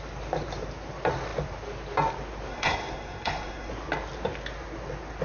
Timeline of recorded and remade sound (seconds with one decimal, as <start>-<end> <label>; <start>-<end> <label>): 0.0-2.5 recorded; 2.5-3.7 remade; 3.7-5.2 recorded

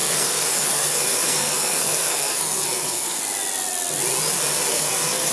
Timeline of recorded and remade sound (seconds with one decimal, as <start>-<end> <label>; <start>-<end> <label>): 0.0-3.2 remade; 3.2-4.7 recorded; 4.7-5.3 remade